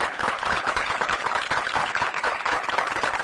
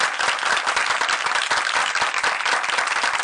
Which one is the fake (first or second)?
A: first